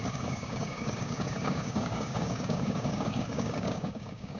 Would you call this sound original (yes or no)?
no